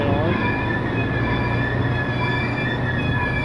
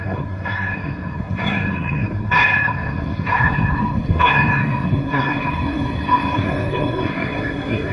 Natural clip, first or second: first